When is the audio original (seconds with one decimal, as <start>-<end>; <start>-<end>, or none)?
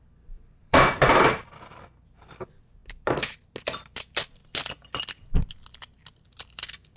0.0-0.6; 1.2-7.0